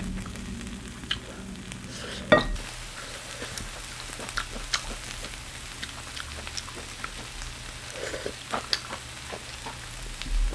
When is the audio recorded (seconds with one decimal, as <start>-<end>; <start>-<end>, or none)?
0.0-10.5